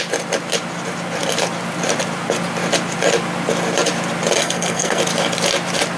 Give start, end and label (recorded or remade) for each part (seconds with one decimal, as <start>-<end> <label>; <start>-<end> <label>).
0.0-4.4 recorded; 4.4-5.0 remade; 5.0-6.0 recorded